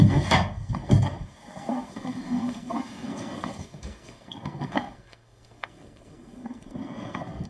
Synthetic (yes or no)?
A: yes